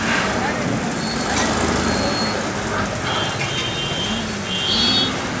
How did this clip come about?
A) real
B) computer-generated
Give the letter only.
A